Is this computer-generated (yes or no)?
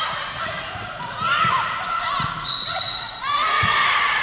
yes